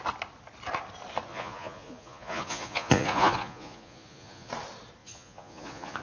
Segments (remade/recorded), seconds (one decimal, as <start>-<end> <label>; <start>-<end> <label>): 0.0-1.3 recorded; 1.3-4.5 remade; 4.5-5.0 recorded; 5.0-6.0 remade